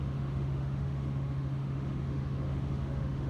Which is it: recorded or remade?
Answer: remade